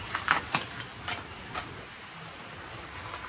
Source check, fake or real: fake